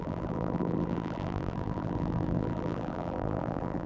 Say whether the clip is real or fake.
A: fake